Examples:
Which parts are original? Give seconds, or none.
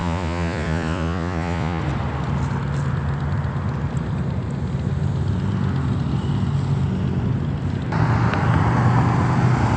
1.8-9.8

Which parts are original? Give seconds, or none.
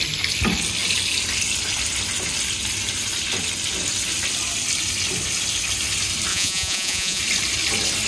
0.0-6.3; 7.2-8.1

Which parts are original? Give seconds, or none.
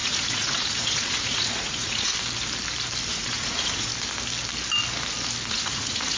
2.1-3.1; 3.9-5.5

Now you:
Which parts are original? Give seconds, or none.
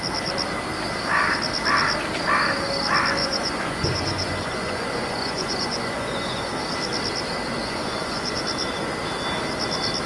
0.0-3.2; 6.5-7.6; 8.4-10.1